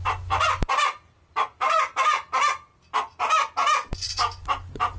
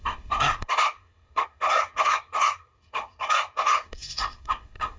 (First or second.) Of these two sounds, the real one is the first